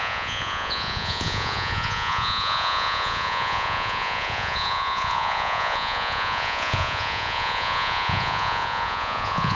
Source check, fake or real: fake